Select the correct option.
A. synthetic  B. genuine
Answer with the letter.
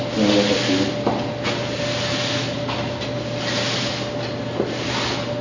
B